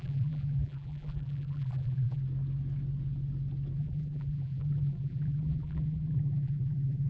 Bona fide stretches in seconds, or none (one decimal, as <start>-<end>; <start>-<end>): 2.2-3.8